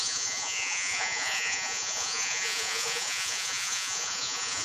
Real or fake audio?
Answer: fake